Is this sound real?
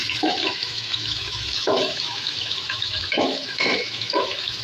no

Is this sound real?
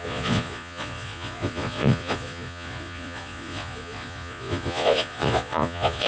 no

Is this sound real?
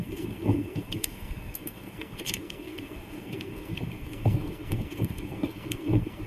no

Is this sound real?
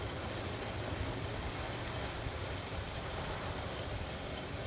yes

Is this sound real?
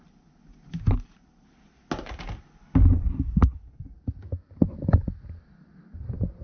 yes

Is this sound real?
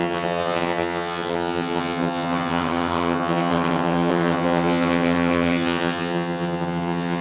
no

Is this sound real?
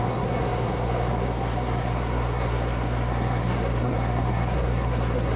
no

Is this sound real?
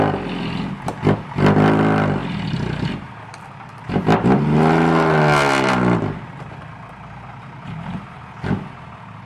yes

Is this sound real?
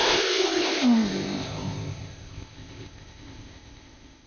no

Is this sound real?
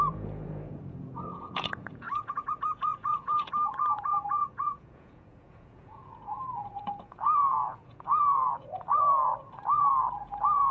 no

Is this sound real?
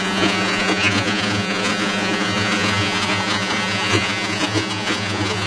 no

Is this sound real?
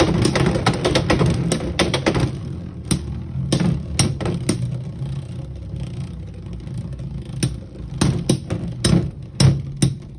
yes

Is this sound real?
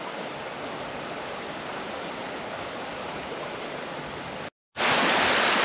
yes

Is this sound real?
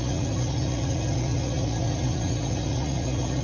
no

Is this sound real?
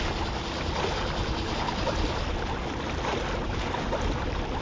yes